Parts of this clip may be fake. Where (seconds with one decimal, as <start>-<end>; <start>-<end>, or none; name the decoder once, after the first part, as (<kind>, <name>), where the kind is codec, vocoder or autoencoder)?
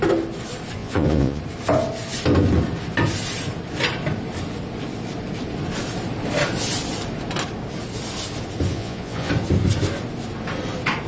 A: 0.8-1.4 (vocoder, Vocos); 8.7-9.3